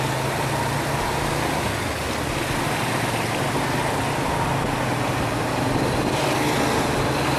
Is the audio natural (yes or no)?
yes